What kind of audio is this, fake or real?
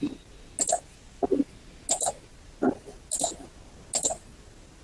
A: real